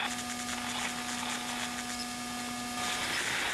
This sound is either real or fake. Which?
real